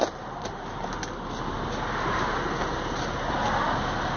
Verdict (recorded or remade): recorded